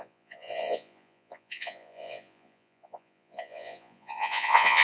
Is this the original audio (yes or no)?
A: no